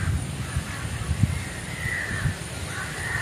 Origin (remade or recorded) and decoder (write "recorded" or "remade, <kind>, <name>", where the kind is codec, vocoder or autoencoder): recorded